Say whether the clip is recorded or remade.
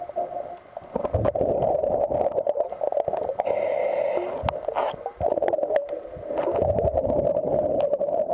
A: recorded